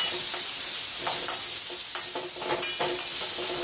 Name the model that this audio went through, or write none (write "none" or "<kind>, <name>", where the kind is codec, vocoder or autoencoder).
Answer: none